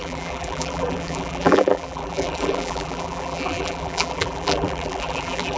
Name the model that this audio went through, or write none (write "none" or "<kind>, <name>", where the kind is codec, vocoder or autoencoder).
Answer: vocoder, BigVGAN v2